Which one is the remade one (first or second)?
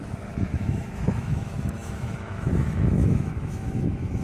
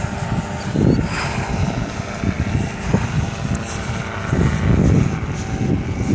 first